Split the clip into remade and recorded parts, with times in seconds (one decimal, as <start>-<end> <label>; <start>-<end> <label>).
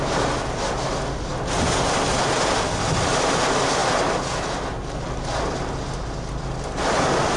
0.0-7.4 recorded